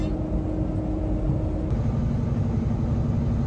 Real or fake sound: real